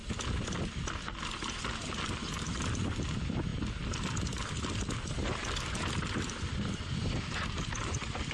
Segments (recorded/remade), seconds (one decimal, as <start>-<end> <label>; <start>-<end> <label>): 0.0-1.6 recorded; 1.6-3.5 remade; 3.5-6.2 recorded; 6.2-8.3 remade